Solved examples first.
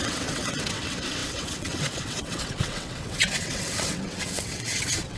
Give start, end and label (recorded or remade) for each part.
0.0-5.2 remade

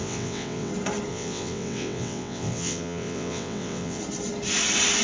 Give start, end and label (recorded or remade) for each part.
0.0-0.7 remade; 0.7-1.1 recorded; 1.1-4.0 remade; 4.0-5.0 recorded

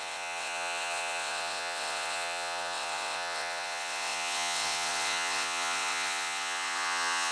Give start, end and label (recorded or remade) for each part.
0.0-7.3 remade

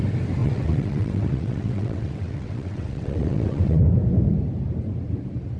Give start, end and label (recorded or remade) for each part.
0.0-0.4 recorded; 0.4-3.8 remade; 3.8-5.6 recorded

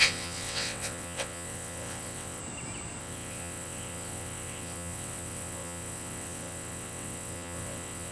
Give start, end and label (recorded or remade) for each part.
0.0-2.4 remade; 2.4-3.0 recorded; 3.0-8.1 remade

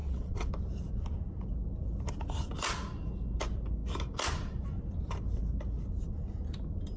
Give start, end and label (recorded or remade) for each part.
0.0-0.5 remade; 0.5-7.0 recorded